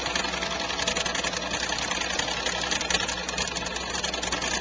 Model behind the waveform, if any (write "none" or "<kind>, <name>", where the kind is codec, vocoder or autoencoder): none